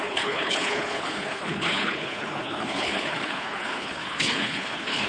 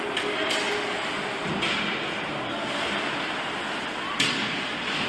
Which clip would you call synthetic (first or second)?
first